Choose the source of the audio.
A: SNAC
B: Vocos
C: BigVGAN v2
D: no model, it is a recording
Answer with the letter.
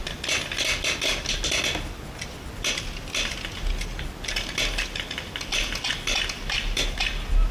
D